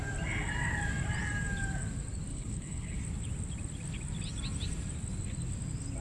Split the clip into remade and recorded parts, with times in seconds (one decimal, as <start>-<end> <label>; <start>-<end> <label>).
0.0-2.3 recorded; 2.3-3.0 remade; 3.0-6.0 recorded